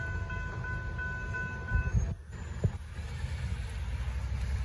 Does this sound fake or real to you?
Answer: real